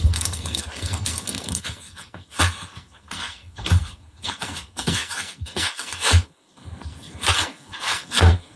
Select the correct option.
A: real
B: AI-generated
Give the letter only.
B